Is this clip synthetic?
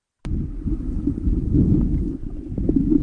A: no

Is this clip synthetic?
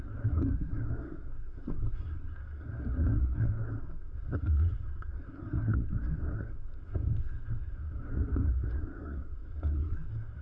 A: yes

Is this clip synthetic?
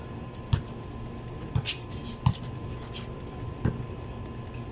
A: no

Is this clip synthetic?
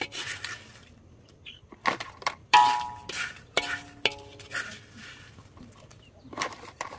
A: no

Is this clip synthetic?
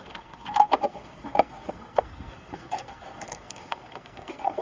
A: yes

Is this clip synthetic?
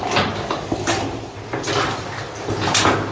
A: no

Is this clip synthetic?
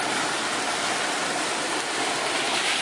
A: no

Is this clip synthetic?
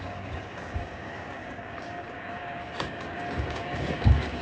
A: yes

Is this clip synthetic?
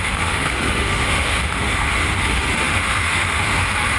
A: yes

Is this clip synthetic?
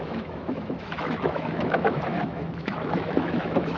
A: yes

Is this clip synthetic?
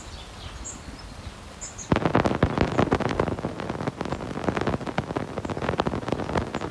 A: no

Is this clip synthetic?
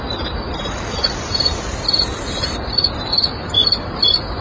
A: no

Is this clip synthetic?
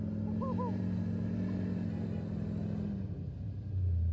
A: no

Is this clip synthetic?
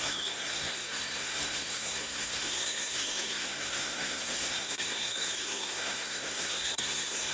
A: yes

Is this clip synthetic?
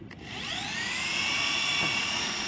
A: yes